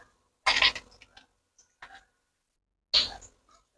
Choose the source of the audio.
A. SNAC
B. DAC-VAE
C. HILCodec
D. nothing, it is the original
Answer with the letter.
D